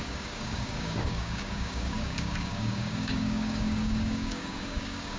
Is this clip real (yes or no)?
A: no